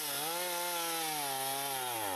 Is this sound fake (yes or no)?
no